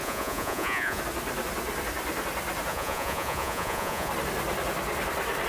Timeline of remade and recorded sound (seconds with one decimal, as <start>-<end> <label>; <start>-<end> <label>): 0.0-1.0 remade; 1.0-2.7 recorded; 2.7-4.1 remade; 4.1-5.5 recorded